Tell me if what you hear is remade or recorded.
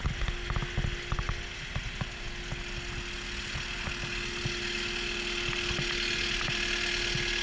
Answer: recorded